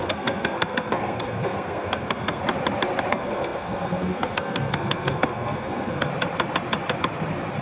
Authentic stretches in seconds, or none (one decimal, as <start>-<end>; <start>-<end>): 2.4-3.1; 6.1-7.6